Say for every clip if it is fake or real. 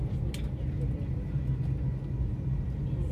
real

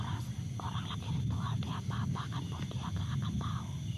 real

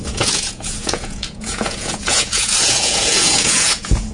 fake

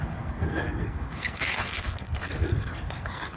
fake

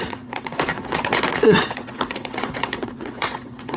fake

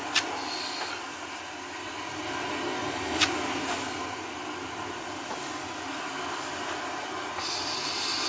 real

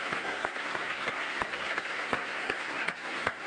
fake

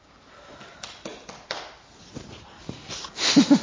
real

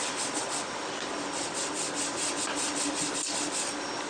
real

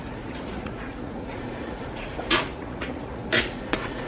fake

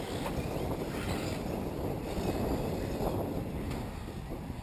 real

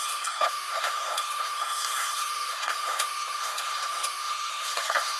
fake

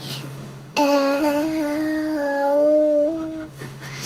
fake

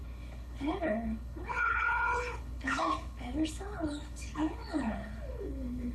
fake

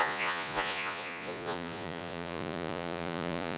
fake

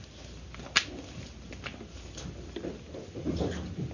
real